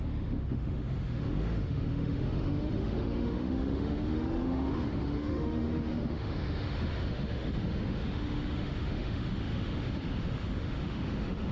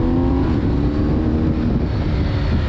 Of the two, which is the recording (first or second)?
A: second